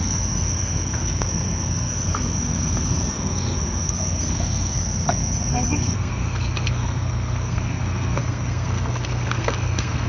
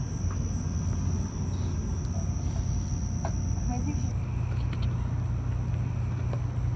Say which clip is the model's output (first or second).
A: first